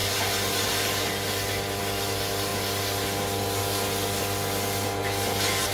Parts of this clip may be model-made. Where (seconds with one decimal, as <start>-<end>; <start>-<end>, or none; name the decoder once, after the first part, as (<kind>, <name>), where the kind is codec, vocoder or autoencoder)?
none